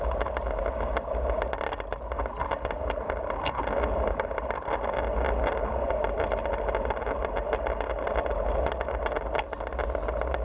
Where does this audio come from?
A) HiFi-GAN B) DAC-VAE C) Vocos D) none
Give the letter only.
D